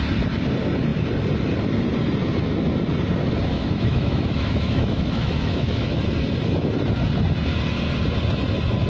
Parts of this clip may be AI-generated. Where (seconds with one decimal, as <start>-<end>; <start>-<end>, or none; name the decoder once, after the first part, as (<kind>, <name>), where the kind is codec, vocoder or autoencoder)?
3.5-6.0 (autoencoder, DAC-VAE)